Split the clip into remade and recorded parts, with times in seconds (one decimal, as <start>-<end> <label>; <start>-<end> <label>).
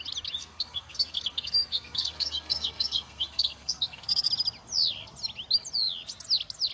0.0-0.4 recorded; 0.4-4.3 remade; 4.3-6.7 recorded